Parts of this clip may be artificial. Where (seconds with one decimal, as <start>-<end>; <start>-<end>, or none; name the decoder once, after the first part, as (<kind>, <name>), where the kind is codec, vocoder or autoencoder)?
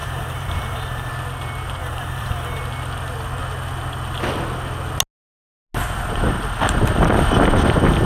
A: 0.0-1.1 (vocoder, BigVGAN v2); 1.8-2.6